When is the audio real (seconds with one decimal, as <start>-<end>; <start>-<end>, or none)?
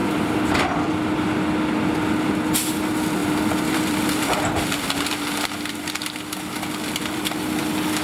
0.8-3.2; 5.9-8.0